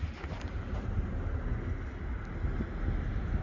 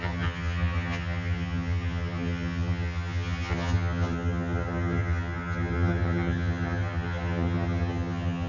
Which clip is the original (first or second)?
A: first